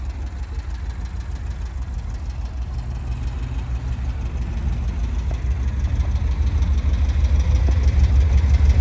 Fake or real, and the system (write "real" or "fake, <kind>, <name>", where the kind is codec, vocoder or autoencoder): real